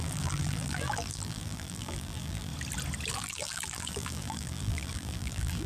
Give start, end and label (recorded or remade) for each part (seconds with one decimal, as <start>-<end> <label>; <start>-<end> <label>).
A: 0.0-2.5 remade; 2.5-3.1 recorded; 3.1-5.7 remade